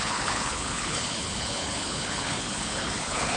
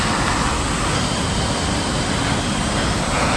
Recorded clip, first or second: second